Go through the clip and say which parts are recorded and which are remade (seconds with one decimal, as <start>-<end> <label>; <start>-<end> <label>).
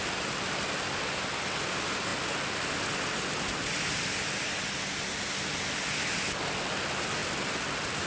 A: 0.0-8.1 recorded